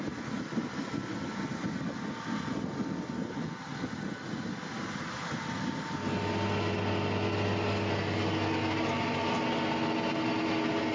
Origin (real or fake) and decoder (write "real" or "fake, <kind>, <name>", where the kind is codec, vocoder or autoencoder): real